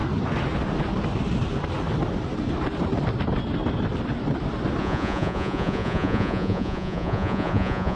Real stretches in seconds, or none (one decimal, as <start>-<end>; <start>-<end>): 0.0-4.8